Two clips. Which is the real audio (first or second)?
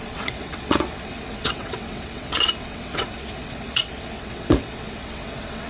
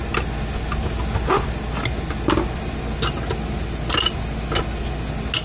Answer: second